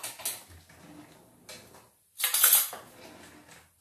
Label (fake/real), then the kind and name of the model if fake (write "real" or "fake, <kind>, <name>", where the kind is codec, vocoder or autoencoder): real